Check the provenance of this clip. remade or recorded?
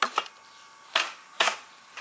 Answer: recorded